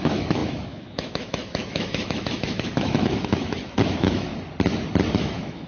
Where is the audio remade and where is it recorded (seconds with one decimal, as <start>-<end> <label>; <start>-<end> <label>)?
0.0-4.3 remade; 4.3-5.1 recorded; 5.1-5.7 remade